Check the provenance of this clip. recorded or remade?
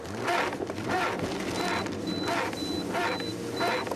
recorded